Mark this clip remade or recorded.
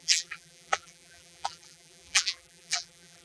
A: remade